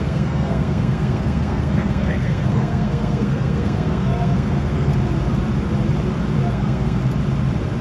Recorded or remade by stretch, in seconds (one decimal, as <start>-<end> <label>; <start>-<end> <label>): 0.0-4.9 remade; 4.9-6.5 recorded; 6.5-7.0 remade; 7.0-7.8 recorded

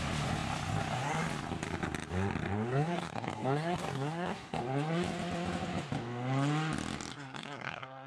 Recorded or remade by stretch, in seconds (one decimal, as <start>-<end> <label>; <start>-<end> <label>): 0.0-2.7 recorded; 2.7-4.6 remade; 4.6-7.1 recorded; 7.1-8.1 remade

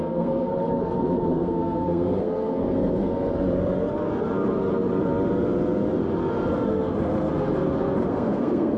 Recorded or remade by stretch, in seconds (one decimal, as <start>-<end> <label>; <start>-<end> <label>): 0.0-0.5 remade; 0.5-1.3 recorded; 1.3-3.1 remade; 3.1-8.1 recorded; 8.1-8.8 remade

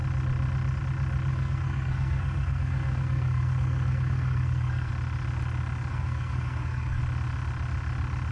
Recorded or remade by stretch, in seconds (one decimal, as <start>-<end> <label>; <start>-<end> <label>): 0.0-1.3 recorded; 1.3-4.9 remade; 4.9-5.9 recorded; 5.9-7.0 remade; 7.0-8.3 recorded

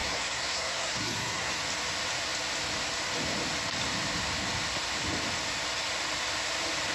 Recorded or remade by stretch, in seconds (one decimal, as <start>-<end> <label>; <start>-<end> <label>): 0.0-1.6 remade; 1.6-6.9 recorded

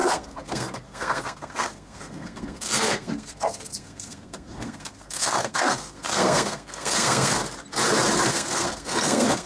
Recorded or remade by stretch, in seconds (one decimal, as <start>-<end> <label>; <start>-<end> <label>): 0.0-7.4 remade; 7.4-8.3 recorded; 8.3-9.5 remade